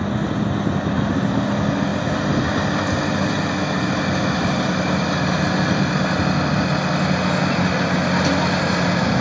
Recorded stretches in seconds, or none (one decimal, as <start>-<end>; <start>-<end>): 0.0-9.2